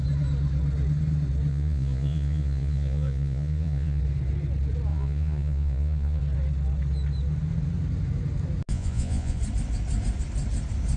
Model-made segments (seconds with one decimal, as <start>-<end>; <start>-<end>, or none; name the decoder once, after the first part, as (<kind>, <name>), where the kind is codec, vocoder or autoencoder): 1.5-4.0 (vocoder, Vocos); 4.9-6.2; 8.7-9.4